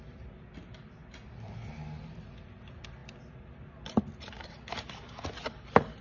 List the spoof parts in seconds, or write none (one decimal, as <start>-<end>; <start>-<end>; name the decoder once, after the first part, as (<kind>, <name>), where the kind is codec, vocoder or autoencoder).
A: none